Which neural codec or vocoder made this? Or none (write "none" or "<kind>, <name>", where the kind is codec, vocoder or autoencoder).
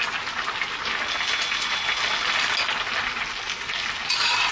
none